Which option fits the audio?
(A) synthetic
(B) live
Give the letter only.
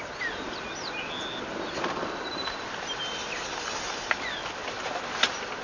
B